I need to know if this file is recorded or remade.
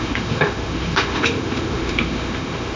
remade